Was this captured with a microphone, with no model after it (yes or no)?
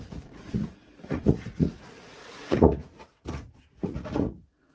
no